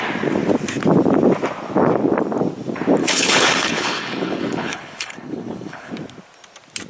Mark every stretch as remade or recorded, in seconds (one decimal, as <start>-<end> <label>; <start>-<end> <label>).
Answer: 0.0-3.0 recorded; 3.0-5.9 remade; 5.9-6.9 recorded